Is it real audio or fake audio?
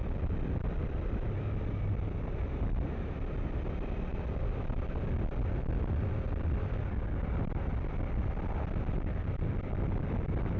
real